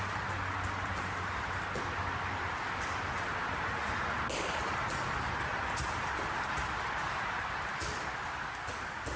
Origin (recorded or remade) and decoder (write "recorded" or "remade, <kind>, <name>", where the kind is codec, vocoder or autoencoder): recorded